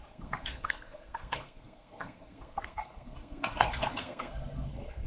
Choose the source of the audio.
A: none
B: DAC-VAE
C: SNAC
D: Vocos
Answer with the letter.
C